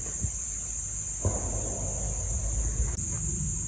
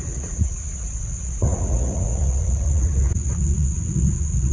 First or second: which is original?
first